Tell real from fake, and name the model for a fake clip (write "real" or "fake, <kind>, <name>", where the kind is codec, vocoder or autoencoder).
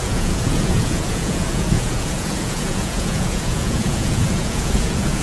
fake, vocoder, Vocos